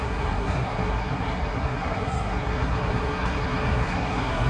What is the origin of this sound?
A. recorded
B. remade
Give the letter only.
B